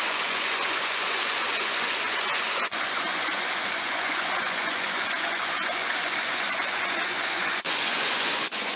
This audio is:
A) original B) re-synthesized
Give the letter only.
B